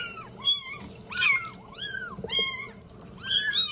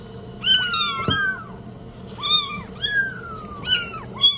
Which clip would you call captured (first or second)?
second